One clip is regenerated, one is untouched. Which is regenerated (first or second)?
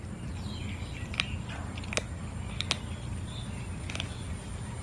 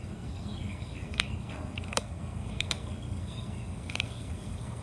second